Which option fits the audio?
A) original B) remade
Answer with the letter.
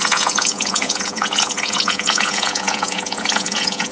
B